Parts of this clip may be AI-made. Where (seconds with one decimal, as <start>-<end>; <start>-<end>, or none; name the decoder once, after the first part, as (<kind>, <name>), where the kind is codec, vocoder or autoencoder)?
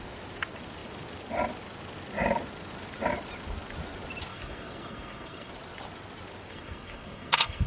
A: 4.3-5.5 (codec, SNAC); 6.5-7.7